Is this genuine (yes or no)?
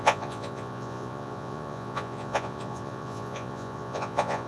no